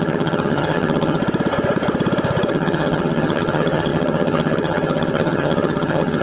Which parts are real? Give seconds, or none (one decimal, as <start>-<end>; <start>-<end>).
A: 1.2-2.5